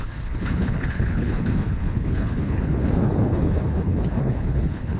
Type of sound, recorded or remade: remade